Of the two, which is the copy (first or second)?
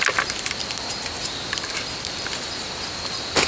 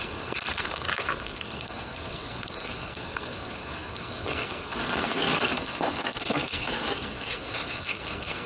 second